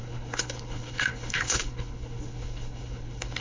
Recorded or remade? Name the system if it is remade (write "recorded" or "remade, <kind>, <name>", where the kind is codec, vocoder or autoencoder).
remade, codec, HILCodec